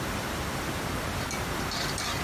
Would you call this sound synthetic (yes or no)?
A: no